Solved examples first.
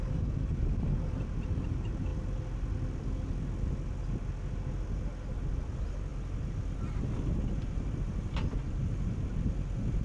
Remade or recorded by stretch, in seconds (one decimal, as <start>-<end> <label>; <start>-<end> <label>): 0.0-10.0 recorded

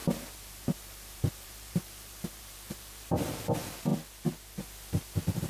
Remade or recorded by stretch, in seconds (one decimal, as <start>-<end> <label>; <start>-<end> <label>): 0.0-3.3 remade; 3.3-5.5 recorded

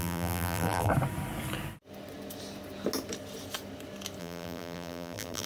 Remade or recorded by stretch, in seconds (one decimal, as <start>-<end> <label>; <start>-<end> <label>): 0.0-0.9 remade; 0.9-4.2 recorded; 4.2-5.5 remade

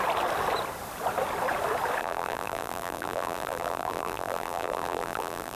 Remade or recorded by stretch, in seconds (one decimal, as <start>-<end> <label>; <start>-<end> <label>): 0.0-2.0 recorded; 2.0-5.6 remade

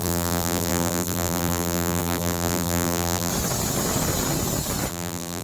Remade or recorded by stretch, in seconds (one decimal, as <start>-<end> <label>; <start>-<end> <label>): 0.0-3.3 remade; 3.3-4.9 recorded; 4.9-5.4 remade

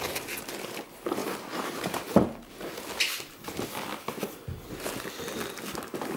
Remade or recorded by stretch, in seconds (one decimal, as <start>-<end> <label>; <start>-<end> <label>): 0.0-1.2 recorded; 1.2-2.5 remade; 2.5-6.2 recorded